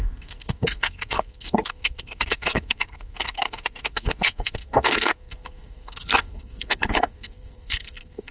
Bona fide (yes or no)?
no